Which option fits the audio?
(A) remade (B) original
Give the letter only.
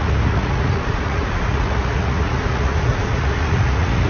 A